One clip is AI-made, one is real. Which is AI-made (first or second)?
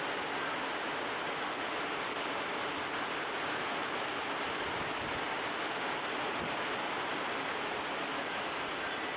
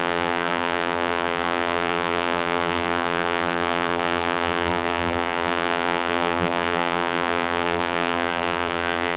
second